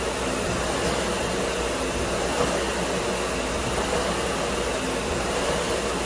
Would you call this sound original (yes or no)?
yes